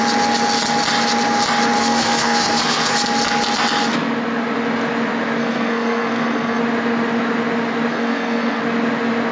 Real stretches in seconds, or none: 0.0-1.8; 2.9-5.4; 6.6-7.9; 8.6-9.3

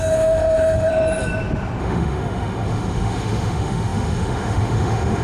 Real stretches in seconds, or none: 0.9-1.8